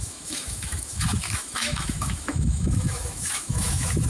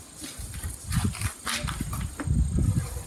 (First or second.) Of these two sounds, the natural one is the second